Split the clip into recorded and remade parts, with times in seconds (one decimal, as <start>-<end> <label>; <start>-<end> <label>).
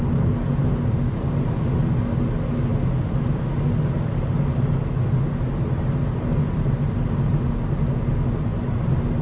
0.0-9.2 recorded